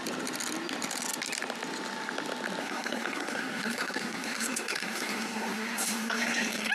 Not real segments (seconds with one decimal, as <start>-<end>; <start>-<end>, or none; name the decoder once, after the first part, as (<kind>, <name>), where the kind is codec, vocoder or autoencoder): 2.6-6.7 (codec, SNAC)